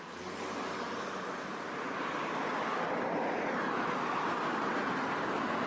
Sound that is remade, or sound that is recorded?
recorded